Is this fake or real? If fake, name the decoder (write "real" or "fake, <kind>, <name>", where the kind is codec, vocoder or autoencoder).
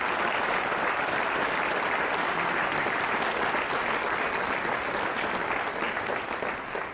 real